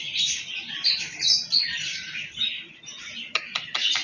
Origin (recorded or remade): recorded